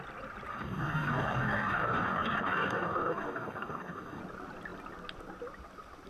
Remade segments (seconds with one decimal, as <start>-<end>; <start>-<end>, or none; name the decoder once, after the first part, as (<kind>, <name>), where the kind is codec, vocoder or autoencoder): 0.5-4.2 (codec, DAC)